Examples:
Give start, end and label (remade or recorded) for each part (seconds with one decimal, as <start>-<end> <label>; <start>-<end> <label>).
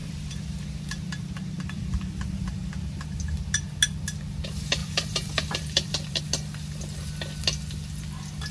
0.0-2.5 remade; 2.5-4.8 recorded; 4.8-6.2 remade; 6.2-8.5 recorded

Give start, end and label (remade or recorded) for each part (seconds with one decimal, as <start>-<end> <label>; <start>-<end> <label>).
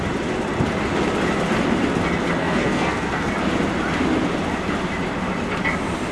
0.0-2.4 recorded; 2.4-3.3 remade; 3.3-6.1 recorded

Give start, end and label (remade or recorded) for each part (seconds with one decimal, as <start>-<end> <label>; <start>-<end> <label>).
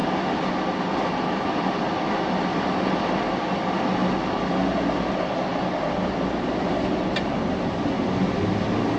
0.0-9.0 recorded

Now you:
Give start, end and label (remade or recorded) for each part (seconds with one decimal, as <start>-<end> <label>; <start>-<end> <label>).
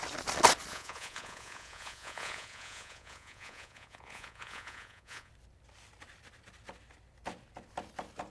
0.0-0.7 recorded; 0.7-5.3 remade; 5.3-8.3 recorded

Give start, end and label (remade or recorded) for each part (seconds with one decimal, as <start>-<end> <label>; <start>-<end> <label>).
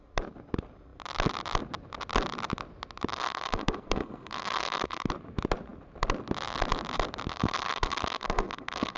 0.0-3.1 recorded; 3.1-5.1 remade; 5.1-7.3 recorded; 7.3-9.0 remade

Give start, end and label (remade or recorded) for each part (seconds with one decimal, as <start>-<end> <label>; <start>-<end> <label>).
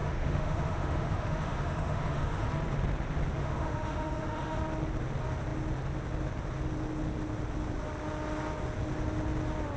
0.0-2.5 remade; 2.5-3.4 recorded; 3.4-4.6 remade; 4.6-9.8 recorded